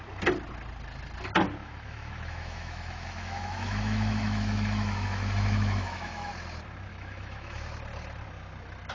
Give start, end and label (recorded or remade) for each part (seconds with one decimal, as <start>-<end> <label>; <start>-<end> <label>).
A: 0.0-1.6 recorded; 1.6-6.3 remade; 6.3-6.9 recorded; 6.9-7.6 remade; 7.6-8.9 recorded